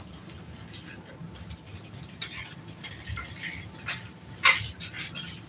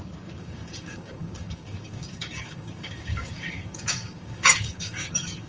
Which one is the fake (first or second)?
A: second